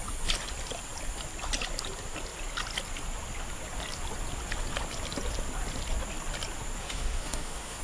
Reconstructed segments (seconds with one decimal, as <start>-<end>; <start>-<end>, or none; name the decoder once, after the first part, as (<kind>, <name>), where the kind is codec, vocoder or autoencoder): 6.8-7.8 (autoencoder, DAC-VAE)